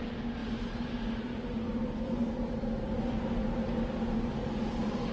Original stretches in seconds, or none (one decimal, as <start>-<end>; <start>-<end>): 0.0-5.1